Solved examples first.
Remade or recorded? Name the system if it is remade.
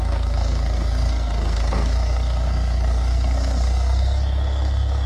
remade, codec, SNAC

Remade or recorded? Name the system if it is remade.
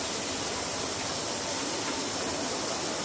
recorded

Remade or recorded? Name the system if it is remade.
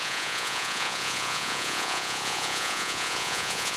remade, vocoder, Vocos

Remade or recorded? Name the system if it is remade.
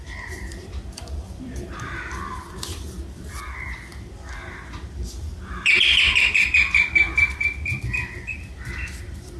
remade, vocoder, BigVGAN v2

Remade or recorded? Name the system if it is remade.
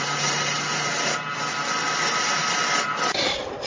recorded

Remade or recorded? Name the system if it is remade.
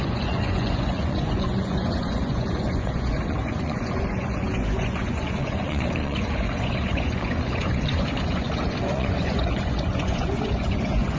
remade, vocoder, Vocos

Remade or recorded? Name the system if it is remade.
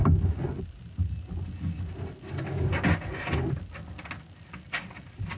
recorded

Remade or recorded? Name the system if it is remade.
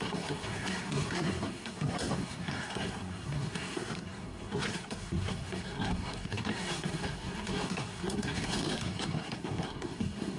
remade, codec, SNAC